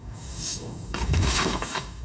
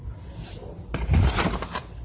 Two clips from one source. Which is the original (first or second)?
second